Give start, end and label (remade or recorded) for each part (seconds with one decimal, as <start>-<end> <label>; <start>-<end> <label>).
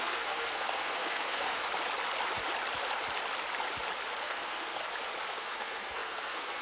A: 0.0-1.6 remade; 1.6-4.2 recorded; 4.2-4.8 remade; 4.8-5.3 recorded; 5.3-6.6 remade